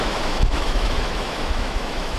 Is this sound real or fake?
fake